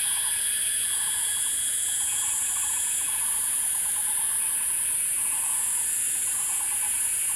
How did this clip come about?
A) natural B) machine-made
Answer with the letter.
B